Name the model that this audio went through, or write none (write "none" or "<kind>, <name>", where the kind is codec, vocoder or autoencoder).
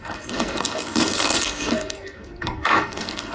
codec, SNAC